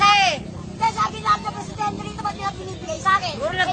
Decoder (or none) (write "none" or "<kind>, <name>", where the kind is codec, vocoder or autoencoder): none